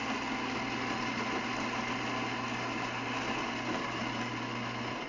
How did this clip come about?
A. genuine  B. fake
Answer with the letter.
A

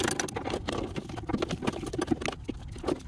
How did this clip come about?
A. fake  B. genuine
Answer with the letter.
B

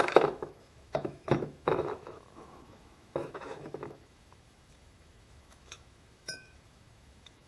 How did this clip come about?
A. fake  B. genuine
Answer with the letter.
A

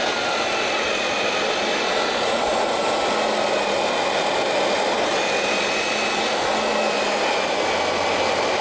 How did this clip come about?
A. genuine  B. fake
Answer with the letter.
A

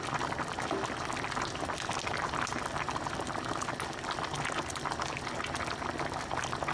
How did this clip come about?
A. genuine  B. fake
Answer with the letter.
A